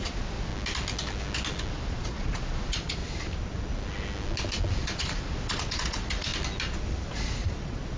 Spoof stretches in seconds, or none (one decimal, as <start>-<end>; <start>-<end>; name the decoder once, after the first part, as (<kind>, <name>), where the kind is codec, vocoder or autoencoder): 0.0-0.5 (vocoder, Vocos); 1.7-3.0; 4.8-6.3; 7.1-8.0